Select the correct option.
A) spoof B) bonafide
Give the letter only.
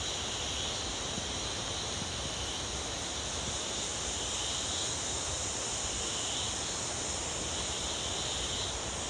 B